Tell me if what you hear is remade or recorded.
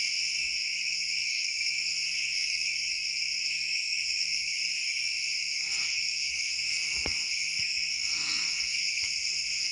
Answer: remade